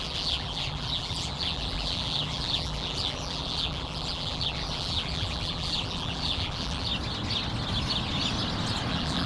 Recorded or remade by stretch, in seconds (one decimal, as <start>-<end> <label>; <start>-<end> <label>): 0.0-6.9 remade; 6.9-8.9 recorded; 8.9-9.3 remade